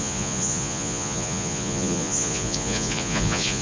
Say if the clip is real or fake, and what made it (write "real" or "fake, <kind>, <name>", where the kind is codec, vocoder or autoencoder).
fake, vocoder, Vocos